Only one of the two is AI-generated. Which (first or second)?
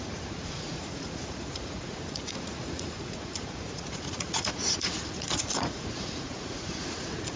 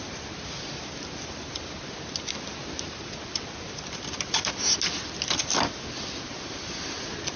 first